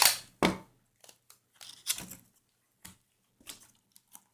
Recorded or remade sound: recorded